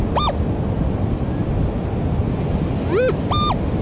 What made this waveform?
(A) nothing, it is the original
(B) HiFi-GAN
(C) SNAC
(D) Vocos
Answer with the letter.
A